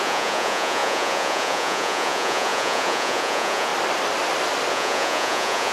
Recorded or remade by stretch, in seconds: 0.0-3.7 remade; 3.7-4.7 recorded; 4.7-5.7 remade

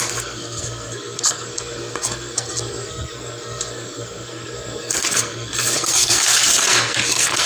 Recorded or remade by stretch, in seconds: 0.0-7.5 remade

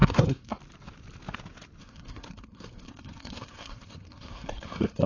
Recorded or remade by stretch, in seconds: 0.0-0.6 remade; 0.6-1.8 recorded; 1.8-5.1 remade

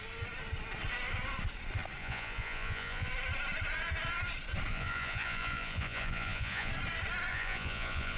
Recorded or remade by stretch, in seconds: 0.0-2.0 recorded; 2.0-3.1 remade; 3.1-4.7 recorded; 4.7-6.7 remade; 6.7-7.3 recorded; 7.3-8.2 remade

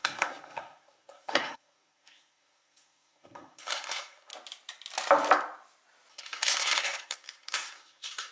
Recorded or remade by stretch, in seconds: 0.0-4.3 remade; 4.3-6.1 recorded; 6.1-8.3 remade

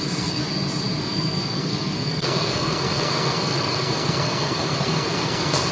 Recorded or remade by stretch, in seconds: 0.0-0.4 remade; 0.4-1.0 recorded; 1.0-5.7 remade

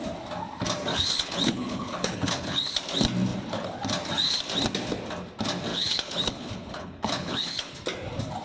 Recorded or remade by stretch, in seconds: 0.0-0.9 recorded; 0.9-2.7 remade; 2.7-5.7 recorded; 5.7-7.7 remade; 7.7-8.4 recorded